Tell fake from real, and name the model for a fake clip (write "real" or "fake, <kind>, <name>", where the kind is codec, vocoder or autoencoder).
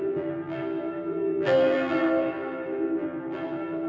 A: fake, vocoder, BigVGAN v2